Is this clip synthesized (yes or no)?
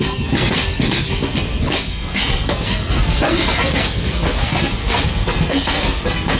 yes